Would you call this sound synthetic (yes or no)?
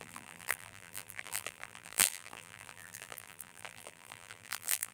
yes